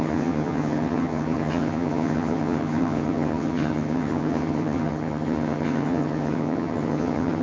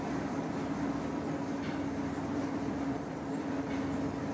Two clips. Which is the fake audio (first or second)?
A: first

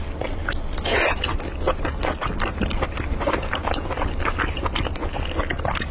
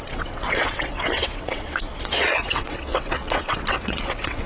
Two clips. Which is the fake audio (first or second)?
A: second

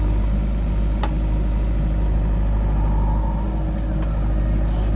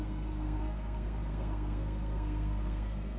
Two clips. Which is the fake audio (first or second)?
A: second